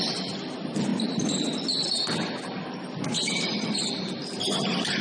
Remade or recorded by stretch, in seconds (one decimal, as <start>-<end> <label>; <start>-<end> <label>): 0.0-5.0 recorded